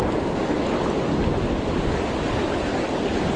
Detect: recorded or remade recorded